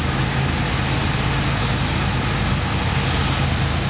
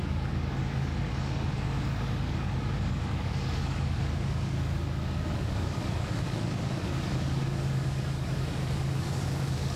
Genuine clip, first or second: first